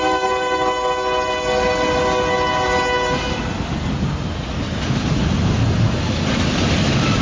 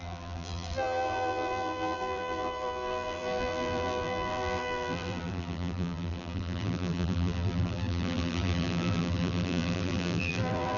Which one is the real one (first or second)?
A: first